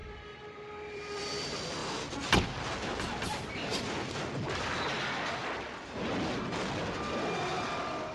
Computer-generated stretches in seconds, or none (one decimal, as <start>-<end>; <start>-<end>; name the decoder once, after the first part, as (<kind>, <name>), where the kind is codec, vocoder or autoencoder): 0.0-1.8 (vocoder, BigVGAN v2); 6.7-7.5